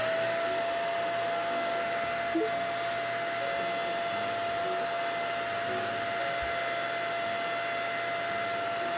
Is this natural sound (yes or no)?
yes